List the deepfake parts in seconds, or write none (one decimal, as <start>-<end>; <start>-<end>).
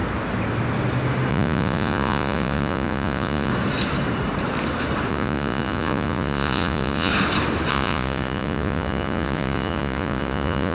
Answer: 1.3-3.5; 5.1-7.1; 7.7-10.7